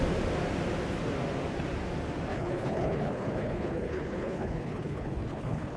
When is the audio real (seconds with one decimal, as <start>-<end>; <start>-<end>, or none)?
0.0-2.3